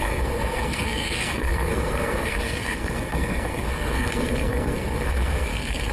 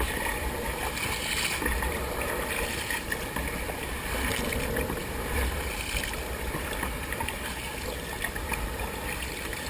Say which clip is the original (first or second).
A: second